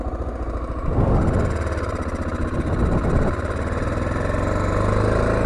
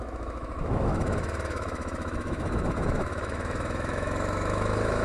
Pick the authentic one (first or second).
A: first